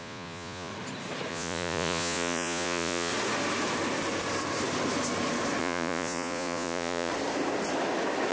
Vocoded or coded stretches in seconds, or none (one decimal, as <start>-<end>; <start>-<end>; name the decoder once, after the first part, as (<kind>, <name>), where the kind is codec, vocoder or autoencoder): 0.0-0.7 (vocoder, Vocos); 1.3-3.1; 5.6-7.1